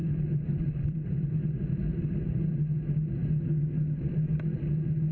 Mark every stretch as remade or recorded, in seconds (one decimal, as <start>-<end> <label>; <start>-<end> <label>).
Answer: 0.0-1.3 remade; 1.3-5.1 recorded